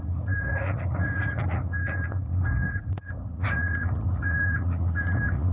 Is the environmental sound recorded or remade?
remade